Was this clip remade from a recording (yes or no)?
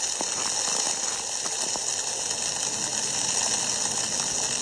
no